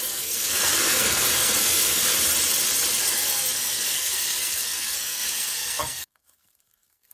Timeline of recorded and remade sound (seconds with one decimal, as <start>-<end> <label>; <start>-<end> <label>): 0.0-2.1 remade; 2.1-3.0 recorded; 3.0-7.1 remade